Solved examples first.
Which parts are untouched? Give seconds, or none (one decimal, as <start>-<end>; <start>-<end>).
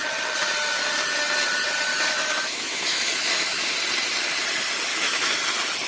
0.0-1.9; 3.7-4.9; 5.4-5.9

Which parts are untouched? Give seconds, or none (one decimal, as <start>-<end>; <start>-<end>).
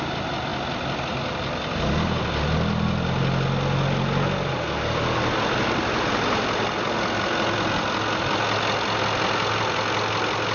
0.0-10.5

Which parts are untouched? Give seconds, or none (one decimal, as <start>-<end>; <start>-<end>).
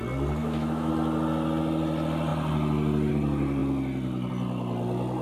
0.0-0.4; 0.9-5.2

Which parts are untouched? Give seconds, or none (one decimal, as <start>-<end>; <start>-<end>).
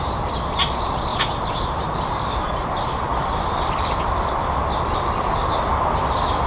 0.0-1.1; 2.7-3.1; 4.6-5.4; 6.0-6.5